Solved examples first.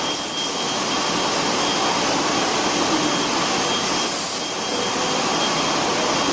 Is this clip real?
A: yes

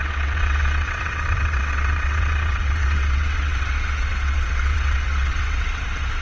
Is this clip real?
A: no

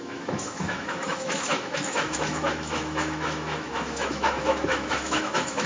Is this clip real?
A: no